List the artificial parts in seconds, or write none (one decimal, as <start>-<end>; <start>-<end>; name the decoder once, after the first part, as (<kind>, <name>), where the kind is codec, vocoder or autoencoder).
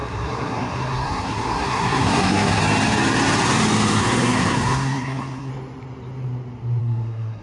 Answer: 0.0-2.6 (codec, SNAC); 4.0-5.5; 6.8-7.4